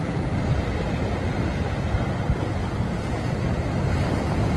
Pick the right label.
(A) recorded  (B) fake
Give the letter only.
A